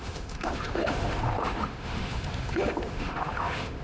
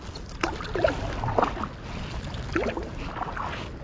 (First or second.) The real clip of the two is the second